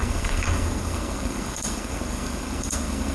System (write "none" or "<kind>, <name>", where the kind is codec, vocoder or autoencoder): codec, SNAC